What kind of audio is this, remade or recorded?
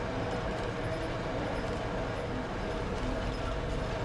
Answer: recorded